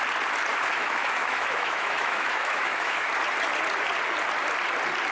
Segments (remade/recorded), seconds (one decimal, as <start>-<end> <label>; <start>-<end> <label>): 0.0-0.5 recorded; 0.5-3.1 remade; 3.1-5.1 recorded

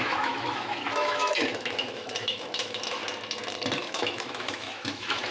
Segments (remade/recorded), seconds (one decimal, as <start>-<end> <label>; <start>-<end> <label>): 0.0-3.0 remade; 3.0-3.8 recorded; 3.8-5.3 remade